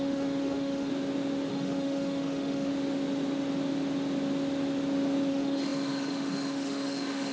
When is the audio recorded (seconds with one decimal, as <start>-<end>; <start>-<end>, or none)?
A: 0.9-1.5; 2.7-5.3